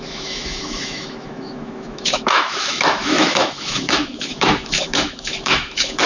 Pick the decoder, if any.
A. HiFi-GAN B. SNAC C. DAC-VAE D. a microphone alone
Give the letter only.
C